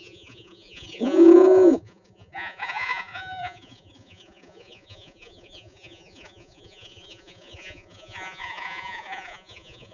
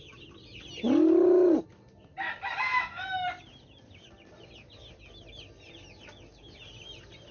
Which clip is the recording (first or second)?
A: second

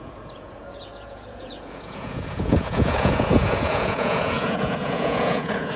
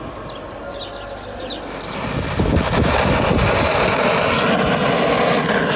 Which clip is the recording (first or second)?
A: second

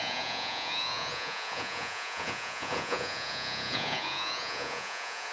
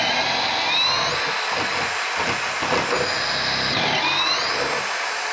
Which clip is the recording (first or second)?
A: second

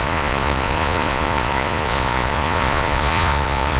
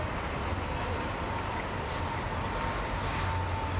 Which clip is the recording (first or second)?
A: second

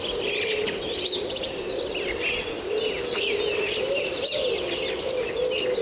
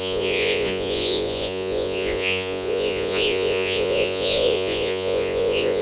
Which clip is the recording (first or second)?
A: first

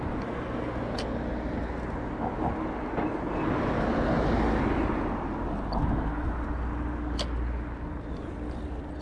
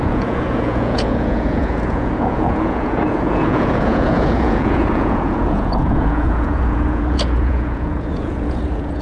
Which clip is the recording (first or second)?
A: first